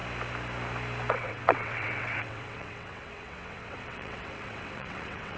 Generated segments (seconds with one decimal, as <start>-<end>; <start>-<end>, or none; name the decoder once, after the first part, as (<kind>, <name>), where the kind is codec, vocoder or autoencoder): 1.1-5.4 (vocoder, WaveNeXt)